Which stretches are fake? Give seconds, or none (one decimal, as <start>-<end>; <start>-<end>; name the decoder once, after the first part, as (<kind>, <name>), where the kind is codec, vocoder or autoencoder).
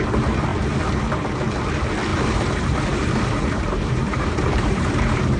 2.1-5.4 (vocoder, BigVGAN v2)